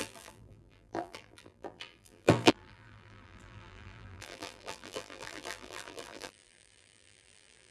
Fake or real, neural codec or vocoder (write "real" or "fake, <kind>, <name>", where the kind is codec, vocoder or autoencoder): fake, vocoder, BigVGAN v2